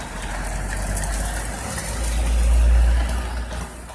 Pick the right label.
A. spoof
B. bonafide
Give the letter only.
B